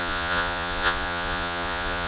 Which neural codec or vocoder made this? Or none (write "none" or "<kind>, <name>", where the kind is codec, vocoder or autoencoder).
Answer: vocoder, Vocos